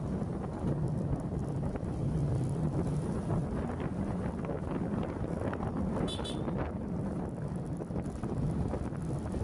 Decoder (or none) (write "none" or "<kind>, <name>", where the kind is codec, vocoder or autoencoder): none